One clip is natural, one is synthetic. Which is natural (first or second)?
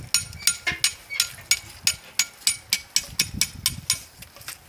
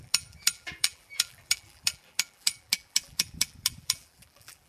first